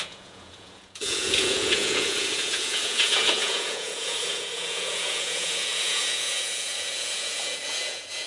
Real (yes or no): no